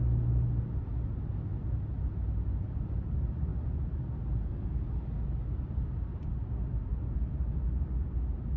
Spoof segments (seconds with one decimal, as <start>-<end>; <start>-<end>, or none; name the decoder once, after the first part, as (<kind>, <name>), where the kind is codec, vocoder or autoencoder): 1.5-2.3 (vocoder, BigVGAN v2)